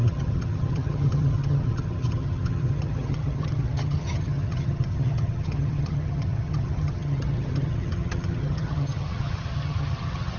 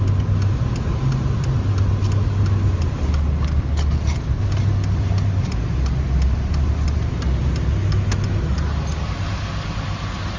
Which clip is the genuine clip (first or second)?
second